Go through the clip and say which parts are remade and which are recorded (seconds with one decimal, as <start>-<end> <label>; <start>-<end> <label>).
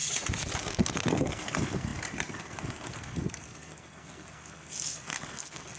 0.0-0.6 recorded; 0.6-5.8 remade